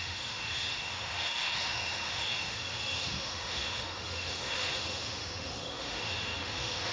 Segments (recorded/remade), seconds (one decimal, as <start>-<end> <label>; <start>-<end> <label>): 0.0-6.9 remade